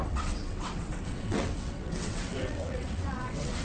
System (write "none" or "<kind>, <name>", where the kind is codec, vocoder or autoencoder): vocoder, WaveNeXt